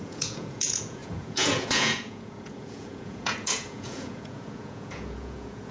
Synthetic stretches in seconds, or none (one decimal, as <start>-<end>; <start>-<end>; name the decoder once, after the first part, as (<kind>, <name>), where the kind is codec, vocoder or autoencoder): 0.0-5.7 (vocoder, Vocos)